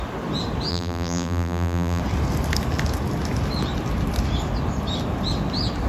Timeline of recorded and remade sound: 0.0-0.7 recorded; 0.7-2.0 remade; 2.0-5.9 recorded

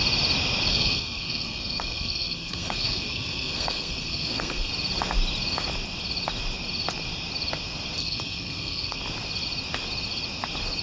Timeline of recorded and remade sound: 0.0-0.7 recorded; 0.7-4.7 remade; 4.7-8.0 recorded; 8.0-9.0 remade; 9.0-10.8 recorded

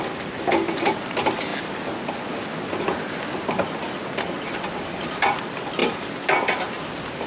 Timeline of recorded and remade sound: 0.0-7.3 recorded

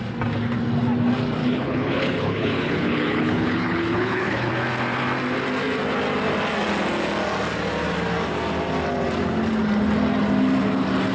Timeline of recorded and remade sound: 0.0-1.4 recorded; 1.4-4.5 remade; 4.5-11.1 recorded

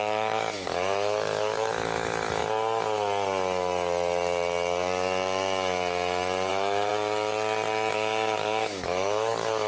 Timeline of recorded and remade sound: 0.0-2.4 remade; 2.4-6.5 recorded; 6.5-6.9 remade; 6.9-7.9 recorded; 7.9-9.7 remade